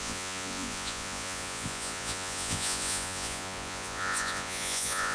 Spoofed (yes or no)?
yes